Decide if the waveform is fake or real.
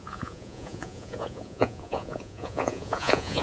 fake